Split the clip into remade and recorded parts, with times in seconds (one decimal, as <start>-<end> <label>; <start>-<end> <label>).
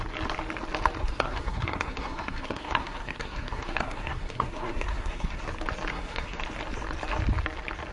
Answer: 0.0-1.0 recorded; 1.0-5.4 remade; 5.4-5.9 recorded; 5.9-6.4 remade; 6.4-7.9 recorded